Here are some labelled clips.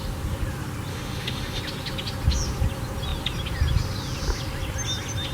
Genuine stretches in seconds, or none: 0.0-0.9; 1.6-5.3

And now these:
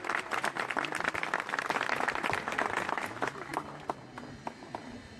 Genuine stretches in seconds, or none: 0.0-5.2

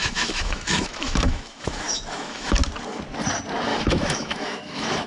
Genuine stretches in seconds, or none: 2.6-3.7